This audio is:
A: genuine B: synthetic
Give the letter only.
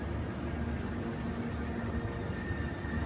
A